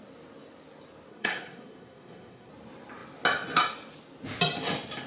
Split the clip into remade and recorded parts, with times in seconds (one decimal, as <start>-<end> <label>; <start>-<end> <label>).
0.0-1.1 recorded; 1.1-2.5 remade; 2.5-5.1 recorded